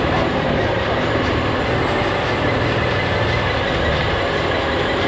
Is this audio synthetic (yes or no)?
no